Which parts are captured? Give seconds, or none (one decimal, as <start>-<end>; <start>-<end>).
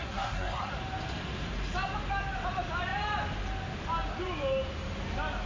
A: 0.7-5.5